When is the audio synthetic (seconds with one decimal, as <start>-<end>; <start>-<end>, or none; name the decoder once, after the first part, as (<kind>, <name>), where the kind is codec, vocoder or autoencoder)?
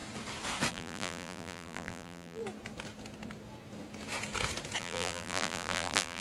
0.7-2.4 (vocoder, BigVGAN v2); 4.8-6.2